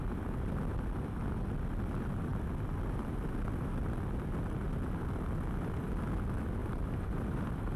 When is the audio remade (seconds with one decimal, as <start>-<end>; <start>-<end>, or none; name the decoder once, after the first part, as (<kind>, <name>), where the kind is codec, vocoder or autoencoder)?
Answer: 6.6-7.8 (vocoder, BigVGAN v2)